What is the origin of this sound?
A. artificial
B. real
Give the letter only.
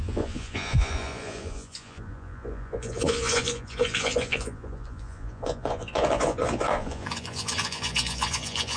A